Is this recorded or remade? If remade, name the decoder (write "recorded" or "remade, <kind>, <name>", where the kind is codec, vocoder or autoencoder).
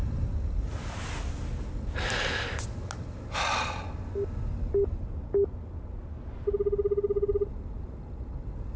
recorded